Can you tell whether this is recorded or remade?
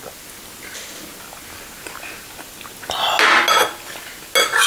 recorded